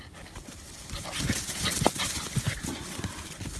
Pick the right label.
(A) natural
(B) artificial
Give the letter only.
A